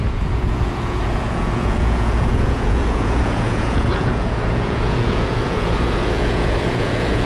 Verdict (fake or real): fake